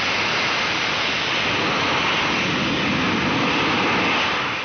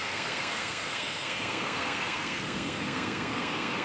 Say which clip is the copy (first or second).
second